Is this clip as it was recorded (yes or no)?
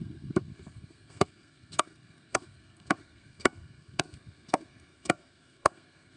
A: no